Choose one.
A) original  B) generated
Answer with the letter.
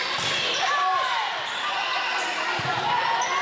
A